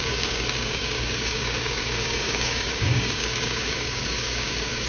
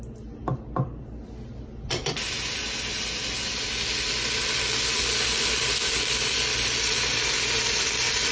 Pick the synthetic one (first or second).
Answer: first